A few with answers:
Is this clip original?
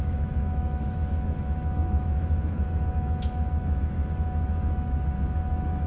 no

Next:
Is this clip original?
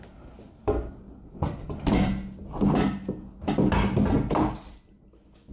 yes